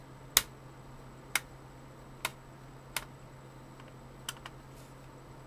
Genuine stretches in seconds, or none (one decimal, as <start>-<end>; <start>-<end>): 0.0-5.5